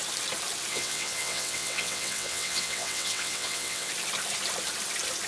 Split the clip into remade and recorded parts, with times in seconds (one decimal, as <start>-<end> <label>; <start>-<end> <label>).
0.0-0.7 recorded; 0.7-3.9 remade; 3.9-5.3 recorded